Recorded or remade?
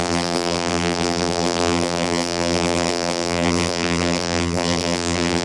remade